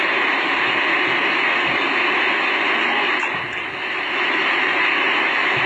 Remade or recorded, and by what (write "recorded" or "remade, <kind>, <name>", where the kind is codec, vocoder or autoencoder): recorded